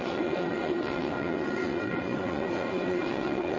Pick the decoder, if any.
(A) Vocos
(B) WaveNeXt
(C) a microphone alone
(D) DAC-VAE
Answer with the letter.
B